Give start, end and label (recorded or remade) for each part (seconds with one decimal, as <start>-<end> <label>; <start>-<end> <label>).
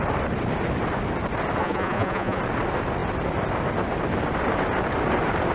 0.0-1.6 recorded; 1.6-2.4 remade; 2.4-5.5 recorded